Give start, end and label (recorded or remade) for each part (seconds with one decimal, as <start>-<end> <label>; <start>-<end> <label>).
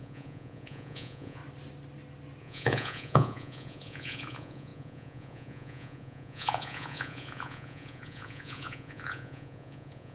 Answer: 0.0-1.4 remade; 1.4-2.4 recorded; 2.4-10.1 remade